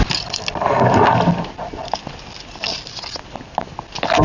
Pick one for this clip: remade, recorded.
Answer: recorded